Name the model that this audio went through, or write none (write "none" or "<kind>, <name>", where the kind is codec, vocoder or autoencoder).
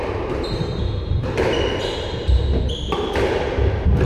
vocoder, BigVGAN v2